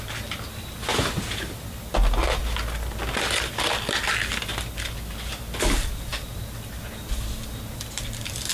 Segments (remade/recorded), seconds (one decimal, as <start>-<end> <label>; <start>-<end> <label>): 0.0-8.5 recorded